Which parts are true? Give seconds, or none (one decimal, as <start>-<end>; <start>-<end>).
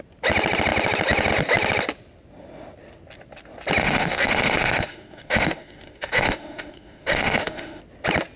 0.0-3.8; 7.8-8.4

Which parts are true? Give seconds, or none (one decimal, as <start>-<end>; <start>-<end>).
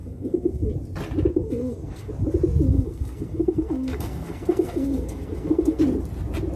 0.7-1.3; 2.1-2.7; 5.8-6.6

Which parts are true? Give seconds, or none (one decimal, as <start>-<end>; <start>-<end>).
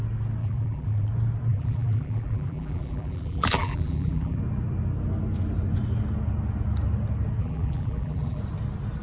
0.0-0.4; 1.1-1.5; 4.4-7.4; 8.4-9.0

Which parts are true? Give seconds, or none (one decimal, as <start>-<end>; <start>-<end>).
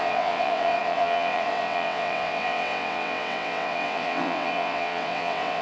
none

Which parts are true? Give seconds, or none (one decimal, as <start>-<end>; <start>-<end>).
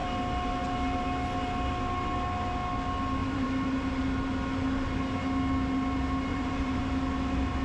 0.0-3.2; 4.0-6.3; 6.9-7.6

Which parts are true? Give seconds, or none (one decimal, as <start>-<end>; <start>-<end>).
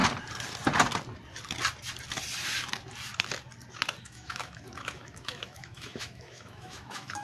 0.0-4.0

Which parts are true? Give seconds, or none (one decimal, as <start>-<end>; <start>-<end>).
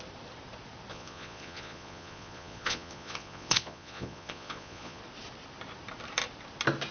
0.0-0.9; 5.0-6.9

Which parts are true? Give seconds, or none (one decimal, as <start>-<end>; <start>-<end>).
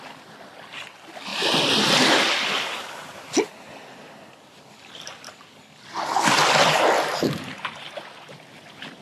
0.0-7.1; 8.0-9.0